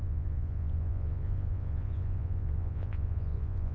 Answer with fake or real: fake